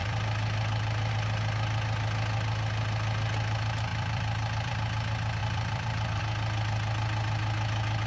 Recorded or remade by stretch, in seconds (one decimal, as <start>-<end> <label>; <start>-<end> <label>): 0.0-1.1 remade; 1.1-3.9 recorded; 3.9-4.7 remade; 4.7-5.4 recorded; 5.4-6.2 remade; 6.2-8.1 recorded